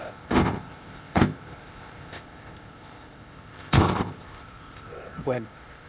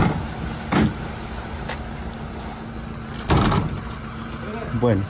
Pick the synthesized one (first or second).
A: first